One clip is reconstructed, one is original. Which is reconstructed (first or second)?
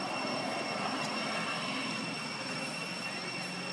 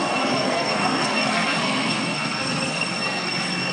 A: second